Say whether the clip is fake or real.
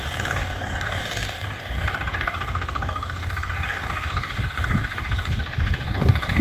fake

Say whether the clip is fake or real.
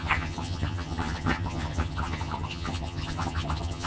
fake